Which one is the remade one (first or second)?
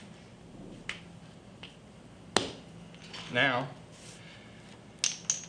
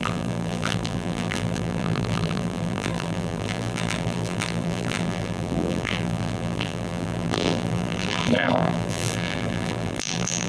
second